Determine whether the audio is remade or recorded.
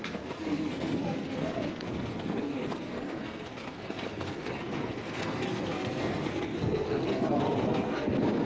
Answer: remade